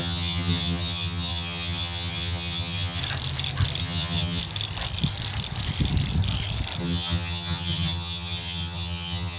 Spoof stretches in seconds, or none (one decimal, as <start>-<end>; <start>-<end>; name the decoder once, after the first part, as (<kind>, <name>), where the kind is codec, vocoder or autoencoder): 0.0-3.0 (vocoder, HiFi-GAN); 3.8-4.4; 6.8-9.4